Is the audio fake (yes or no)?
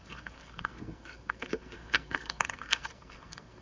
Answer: yes